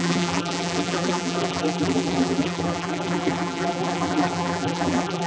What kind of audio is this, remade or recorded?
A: remade